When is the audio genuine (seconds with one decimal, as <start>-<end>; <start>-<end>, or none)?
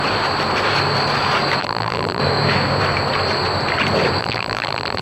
0.0-1.6; 2.2-4.2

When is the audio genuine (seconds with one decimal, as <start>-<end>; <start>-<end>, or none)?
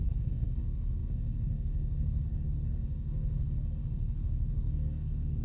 none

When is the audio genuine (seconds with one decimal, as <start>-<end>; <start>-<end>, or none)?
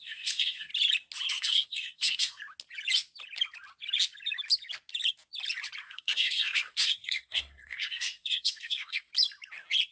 0.7-1.3; 2.4-5.8; 9.1-9.9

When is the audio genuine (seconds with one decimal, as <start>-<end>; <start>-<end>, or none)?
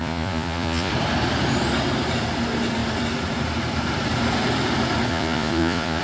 0.9-5.1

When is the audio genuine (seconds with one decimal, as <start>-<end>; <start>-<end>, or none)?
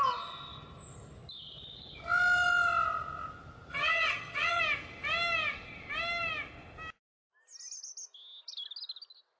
0.0-3.7; 4.6-9.4